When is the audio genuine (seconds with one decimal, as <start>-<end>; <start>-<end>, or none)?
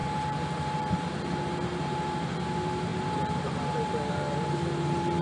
none